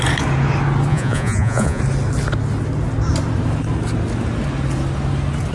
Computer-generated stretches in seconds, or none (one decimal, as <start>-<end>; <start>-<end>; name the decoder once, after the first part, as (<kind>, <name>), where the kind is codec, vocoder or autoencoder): 0.9-1.8 (vocoder, Vocos)